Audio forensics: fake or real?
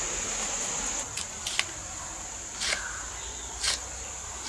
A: real